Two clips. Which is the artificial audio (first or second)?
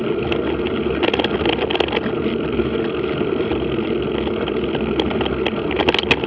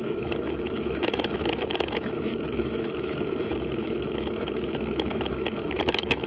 second